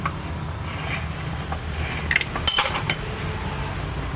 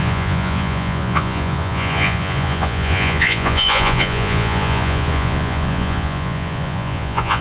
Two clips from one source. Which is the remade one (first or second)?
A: second